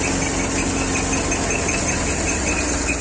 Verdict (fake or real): real